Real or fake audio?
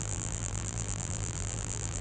fake